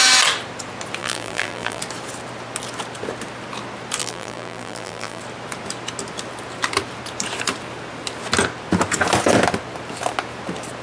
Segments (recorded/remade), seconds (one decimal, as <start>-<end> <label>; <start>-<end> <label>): 0.0-1.0 recorded; 1.0-1.8 remade; 1.8-4.0 recorded; 4.0-5.2 remade; 5.2-10.8 recorded